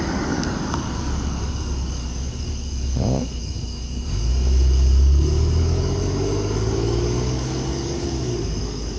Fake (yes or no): yes